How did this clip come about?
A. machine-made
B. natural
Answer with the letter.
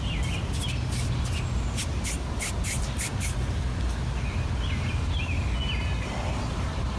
B